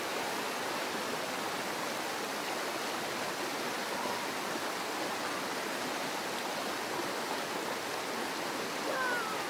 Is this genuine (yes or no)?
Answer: yes